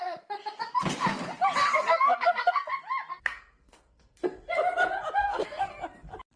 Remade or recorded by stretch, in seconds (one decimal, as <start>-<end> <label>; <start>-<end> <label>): 0.0-1.6 recorded; 1.6-2.7 remade; 2.7-3.1 recorded; 3.1-4.2 remade; 4.2-5.2 recorded; 5.2-5.7 remade; 5.7-6.4 recorded